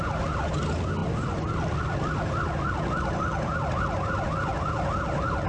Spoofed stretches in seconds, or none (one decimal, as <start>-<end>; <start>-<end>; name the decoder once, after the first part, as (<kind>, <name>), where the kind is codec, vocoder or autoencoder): none